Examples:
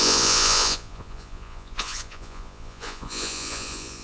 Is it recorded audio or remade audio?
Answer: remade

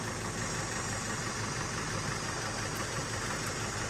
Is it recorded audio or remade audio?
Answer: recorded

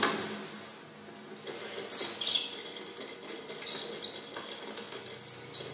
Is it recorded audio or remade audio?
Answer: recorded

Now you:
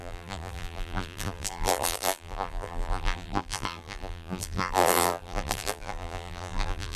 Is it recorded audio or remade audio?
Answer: remade